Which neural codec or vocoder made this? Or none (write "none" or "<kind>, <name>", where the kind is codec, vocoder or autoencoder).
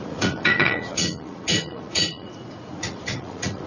vocoder, Vocos